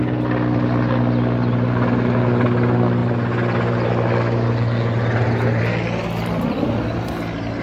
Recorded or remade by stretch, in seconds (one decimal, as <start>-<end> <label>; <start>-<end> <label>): 0.0-7.6 recorded